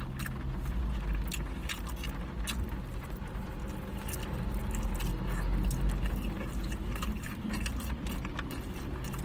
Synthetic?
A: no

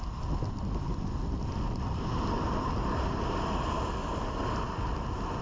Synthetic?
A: no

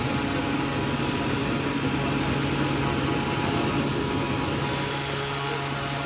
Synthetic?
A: no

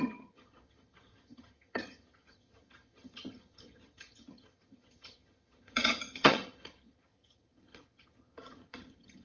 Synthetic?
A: yes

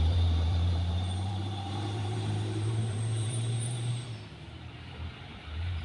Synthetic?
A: yes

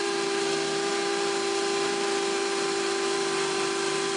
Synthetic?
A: no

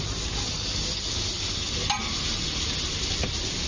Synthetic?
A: no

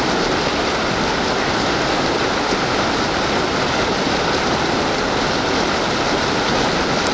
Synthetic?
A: no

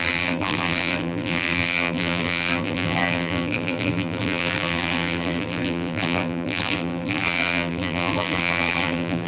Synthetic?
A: yes